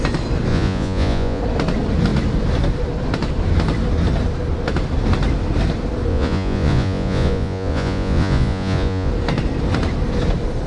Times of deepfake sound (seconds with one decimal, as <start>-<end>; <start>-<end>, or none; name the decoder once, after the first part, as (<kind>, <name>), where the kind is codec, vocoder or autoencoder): 0.5-1.4 (vocoder, Vocos); 6.1-9.1